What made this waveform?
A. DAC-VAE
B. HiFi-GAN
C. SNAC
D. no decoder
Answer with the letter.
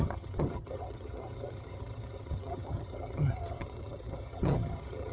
B